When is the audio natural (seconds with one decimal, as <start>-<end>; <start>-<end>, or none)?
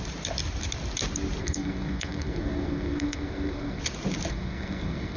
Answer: 0.0-1.4; 3.8-4.3